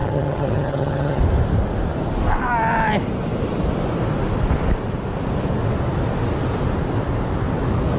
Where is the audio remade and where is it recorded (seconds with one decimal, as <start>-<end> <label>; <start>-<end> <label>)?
0.0-1.2 remade; 1.2-8.0 recorded